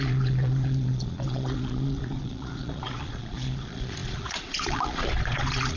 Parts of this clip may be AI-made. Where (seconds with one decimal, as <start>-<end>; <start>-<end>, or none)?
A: 0.0-5.8